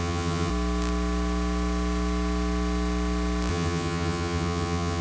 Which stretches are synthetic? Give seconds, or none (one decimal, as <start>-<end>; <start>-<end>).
0.0-0.5; 3.5-5.0